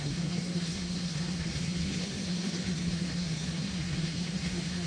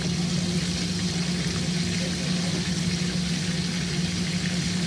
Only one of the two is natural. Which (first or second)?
second